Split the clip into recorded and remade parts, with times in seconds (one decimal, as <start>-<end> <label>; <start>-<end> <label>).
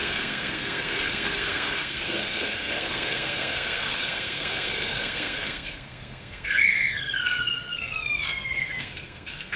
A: 0.0-9.6 remade